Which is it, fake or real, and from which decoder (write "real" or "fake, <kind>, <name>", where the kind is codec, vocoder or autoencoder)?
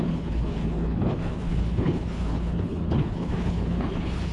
fake, codec, HILCodec